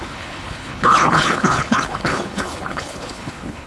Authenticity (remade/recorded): remade